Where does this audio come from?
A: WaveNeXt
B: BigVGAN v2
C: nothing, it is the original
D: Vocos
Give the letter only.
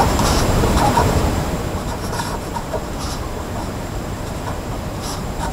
B